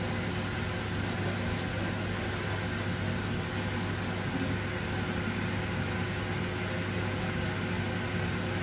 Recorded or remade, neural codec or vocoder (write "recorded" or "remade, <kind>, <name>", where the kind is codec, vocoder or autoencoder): recorded